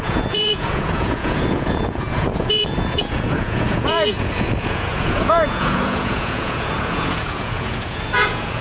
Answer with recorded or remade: remade